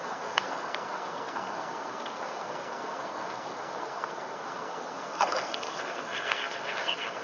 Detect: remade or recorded remade